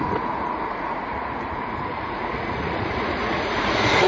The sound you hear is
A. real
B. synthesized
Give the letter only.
B